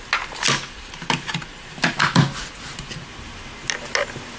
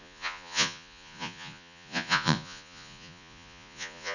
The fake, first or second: second